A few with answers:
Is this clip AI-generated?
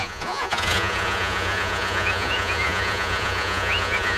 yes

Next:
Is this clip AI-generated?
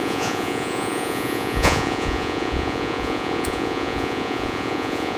yes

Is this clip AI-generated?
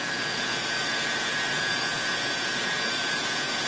yes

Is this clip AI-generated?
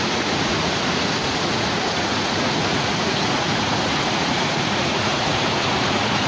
yes